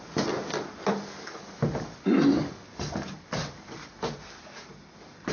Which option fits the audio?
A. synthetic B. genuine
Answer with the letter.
B